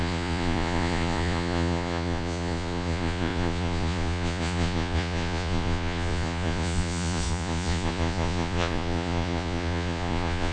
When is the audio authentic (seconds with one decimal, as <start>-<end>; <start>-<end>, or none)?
none